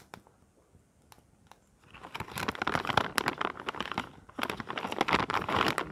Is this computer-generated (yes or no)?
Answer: no